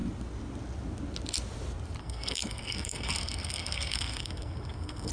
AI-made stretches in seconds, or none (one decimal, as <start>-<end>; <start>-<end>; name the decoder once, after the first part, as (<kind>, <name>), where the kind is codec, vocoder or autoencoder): 2.0-5.1 (codec, SNAC)